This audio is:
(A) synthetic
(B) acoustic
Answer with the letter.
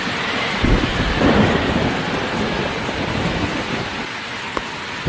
B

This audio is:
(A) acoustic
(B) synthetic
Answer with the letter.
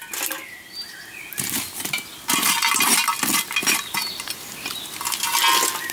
A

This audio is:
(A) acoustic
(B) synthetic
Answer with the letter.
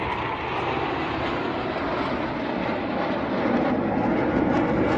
A